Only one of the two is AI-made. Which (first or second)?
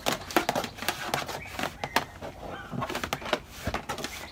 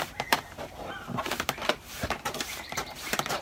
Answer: second